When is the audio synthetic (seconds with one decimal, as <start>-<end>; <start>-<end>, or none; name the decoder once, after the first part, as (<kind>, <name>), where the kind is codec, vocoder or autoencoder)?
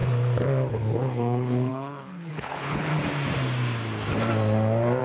0.7-2.9 (codec, HILCodec)